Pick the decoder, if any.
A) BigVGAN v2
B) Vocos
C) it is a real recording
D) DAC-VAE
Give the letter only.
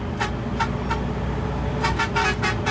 C